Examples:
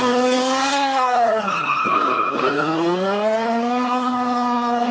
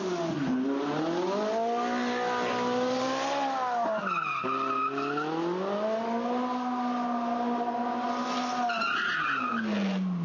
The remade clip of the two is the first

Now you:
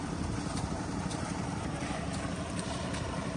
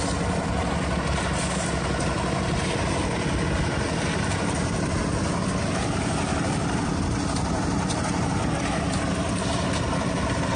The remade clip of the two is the first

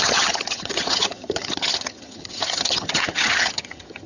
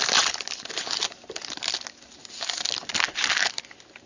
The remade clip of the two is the first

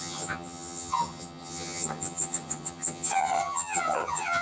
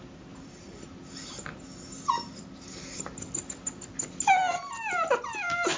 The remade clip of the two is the first